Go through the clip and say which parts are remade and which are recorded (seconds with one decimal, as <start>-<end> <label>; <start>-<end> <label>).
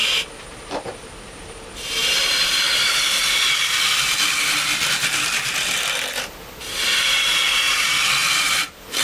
0.0-9.0 recorded